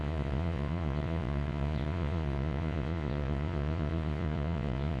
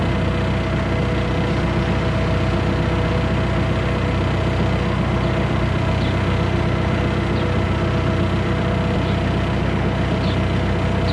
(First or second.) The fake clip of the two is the first